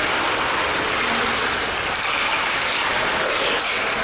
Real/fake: real